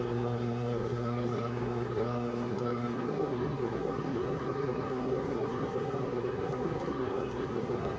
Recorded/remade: remade